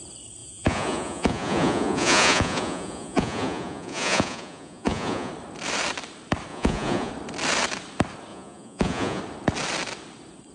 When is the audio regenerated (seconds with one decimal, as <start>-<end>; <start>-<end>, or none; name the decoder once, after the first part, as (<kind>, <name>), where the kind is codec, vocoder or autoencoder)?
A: 0.4-5.3 (vocoder, Vocos); 6.5-7.1; 8.3-9.2

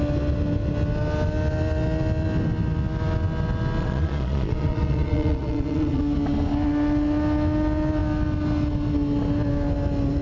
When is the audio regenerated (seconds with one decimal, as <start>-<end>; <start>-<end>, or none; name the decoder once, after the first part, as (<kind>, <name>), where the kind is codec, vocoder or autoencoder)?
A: 3.8-6.0 (vocoder, Vocos)

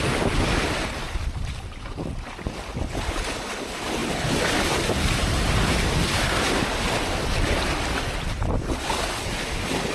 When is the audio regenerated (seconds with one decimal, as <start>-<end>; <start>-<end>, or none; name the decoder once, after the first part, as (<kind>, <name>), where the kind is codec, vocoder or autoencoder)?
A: none

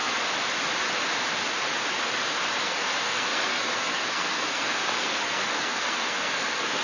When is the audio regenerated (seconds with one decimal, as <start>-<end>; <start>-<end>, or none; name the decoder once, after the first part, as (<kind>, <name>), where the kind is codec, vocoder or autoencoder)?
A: 2.6-6.8 (codec, SNAC)

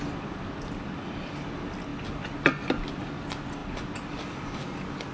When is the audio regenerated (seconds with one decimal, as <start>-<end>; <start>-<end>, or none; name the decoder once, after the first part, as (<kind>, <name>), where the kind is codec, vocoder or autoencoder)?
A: none